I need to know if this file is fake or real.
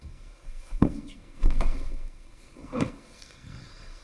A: fake